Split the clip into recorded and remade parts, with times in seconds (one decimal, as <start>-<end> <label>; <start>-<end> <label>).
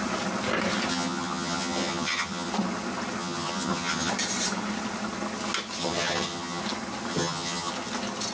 0.0-0.9 recorded; 0.9-2.5 remade; 2.5-3.2 recorded; 3.2-4.1 remade; 4.1-5.8 recorded; 5.8-6.6 remade; 6.6-7.1 recorded; 7.1-7.7 remade; 7.7-8.3 recorded